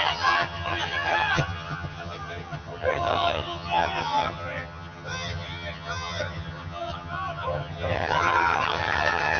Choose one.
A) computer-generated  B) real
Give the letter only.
A